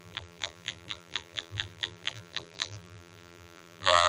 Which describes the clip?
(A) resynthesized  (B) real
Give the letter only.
A